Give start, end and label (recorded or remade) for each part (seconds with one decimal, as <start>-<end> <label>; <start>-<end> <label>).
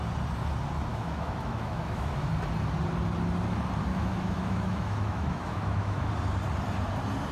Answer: 0.0-0.9 recorded; 0.9-2.3 remade; 2.3-3.9 recorded; 3.9-6.1 remade; 6.1-7.3 recorded